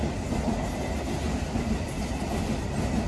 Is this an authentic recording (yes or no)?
yes